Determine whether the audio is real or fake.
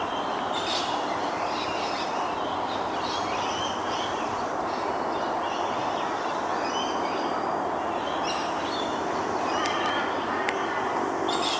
real